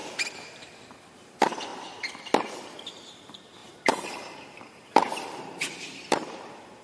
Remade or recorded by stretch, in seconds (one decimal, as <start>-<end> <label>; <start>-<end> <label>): 0.0-1.0 recorded; 1.0-1.7 remade; 1.7-2.5 recorded; 2.5-6.8 remade